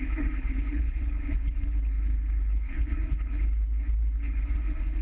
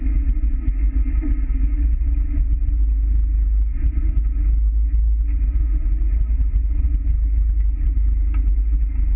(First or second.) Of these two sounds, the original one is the second